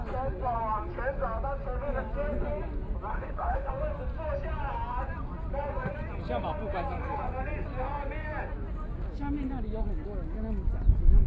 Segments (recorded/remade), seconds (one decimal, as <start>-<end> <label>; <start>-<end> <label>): 0.0-3.1 recorded; 3.1-3.7 remade; 3.7-11.3 recorded